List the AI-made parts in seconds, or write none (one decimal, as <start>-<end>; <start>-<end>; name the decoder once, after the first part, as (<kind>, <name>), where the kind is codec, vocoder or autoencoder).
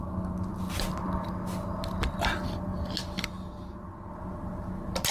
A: none